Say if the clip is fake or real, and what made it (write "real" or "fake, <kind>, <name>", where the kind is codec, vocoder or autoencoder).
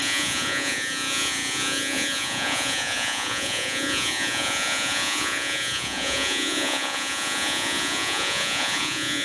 fake, vocoder, Vocos